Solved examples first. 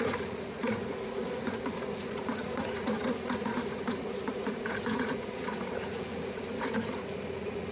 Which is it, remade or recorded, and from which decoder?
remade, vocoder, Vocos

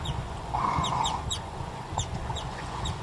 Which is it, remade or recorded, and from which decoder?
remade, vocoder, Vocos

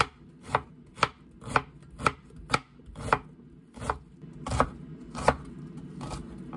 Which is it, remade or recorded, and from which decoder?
recorded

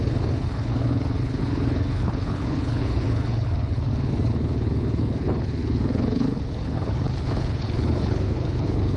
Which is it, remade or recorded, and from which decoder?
remade, codec, HILCodec